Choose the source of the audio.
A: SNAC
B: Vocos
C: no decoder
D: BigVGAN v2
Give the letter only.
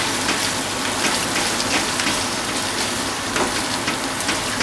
C